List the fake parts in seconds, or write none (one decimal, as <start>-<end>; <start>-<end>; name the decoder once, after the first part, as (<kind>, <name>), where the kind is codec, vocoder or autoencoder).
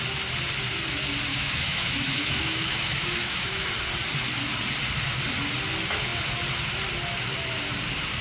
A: 1.3-3.7 (autoencoder, DAC-VAE)